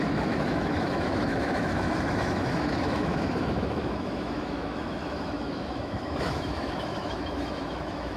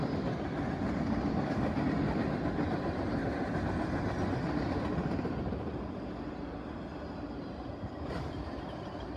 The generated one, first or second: first